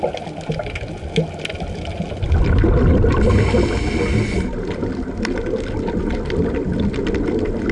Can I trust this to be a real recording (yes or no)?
yes